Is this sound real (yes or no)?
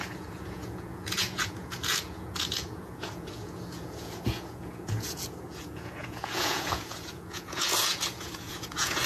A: no